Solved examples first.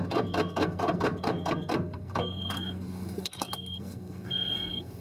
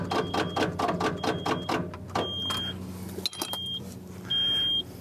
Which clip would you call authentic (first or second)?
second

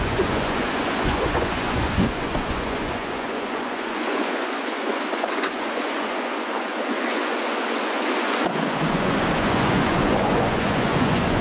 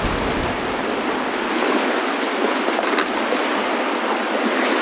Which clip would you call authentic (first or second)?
second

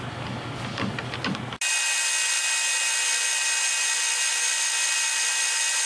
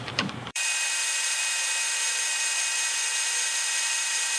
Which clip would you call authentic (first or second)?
first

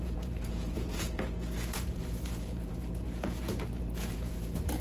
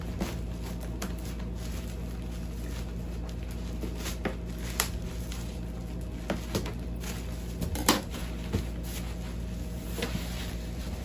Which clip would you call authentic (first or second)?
second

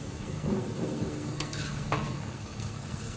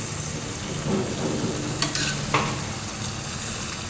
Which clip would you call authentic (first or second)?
second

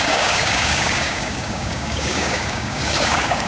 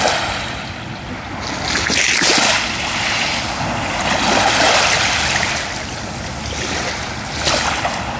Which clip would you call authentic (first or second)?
second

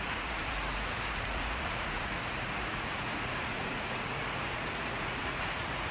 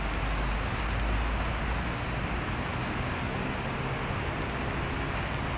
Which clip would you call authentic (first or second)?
second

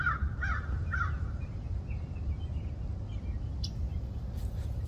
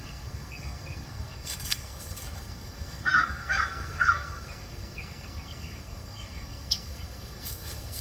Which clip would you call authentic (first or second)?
first